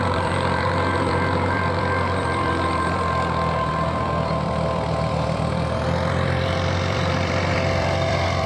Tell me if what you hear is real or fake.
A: fake